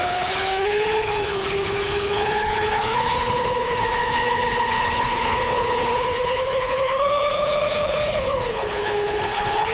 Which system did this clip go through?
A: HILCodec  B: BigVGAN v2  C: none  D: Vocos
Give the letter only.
A